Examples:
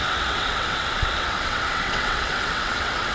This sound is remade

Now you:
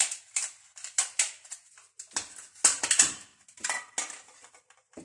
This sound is recorded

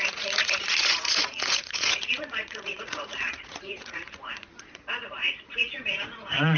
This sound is remade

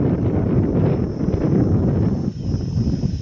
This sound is recorded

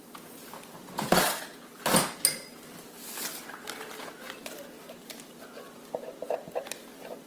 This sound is recorded